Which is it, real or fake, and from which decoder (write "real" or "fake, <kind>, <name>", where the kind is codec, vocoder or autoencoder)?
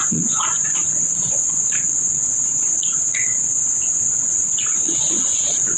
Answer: fake, vocoder, Vocos